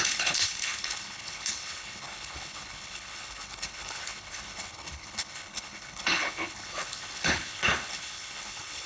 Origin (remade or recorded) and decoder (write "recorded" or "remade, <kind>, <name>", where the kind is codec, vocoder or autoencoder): remade, codec, HILCodec